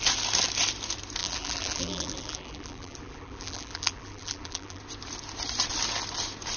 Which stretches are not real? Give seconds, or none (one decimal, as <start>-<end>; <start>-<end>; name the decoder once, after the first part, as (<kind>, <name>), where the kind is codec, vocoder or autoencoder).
1.2-4.8 (vocoder, BigVGAN v2)